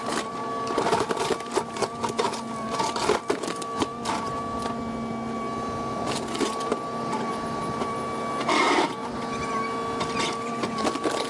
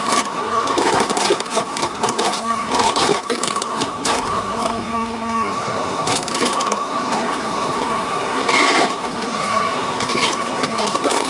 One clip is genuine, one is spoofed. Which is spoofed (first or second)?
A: second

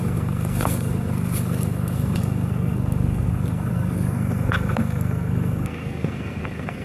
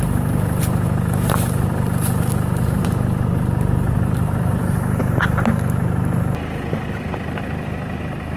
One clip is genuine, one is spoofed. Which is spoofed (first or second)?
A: first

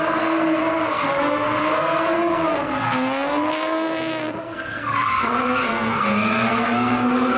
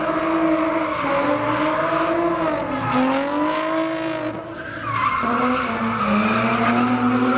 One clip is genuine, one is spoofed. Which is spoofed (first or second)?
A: first